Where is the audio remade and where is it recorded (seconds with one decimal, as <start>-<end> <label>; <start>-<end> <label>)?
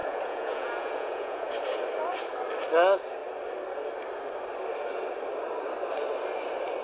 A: 0.0-1.5 remade; 1.5-6.8 recorded